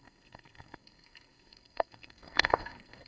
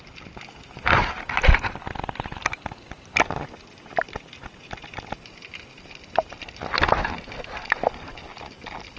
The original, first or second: second